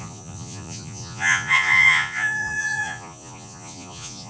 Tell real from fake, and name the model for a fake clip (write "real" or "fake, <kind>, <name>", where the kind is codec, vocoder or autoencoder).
fake, vocoder, Vocos